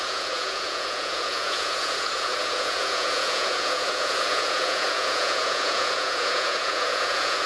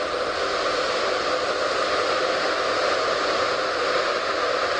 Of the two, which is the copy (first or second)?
first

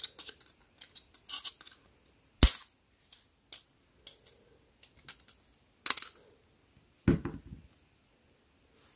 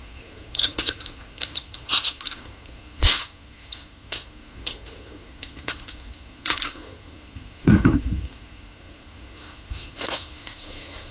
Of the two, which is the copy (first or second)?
second